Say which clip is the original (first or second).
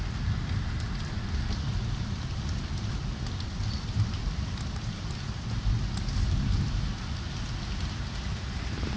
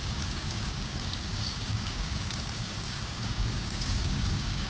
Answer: first